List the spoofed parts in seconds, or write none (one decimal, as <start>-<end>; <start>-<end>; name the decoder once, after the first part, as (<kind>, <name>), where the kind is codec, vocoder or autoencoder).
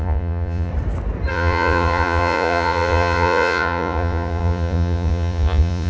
0.0-0.7 (vocoder, Vocos); 1.3-5.9